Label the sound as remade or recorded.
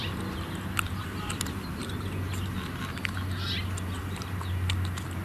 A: recorded